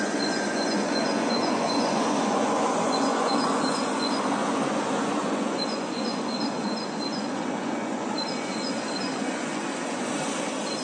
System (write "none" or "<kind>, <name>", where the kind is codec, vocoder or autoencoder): vocoder, Vocos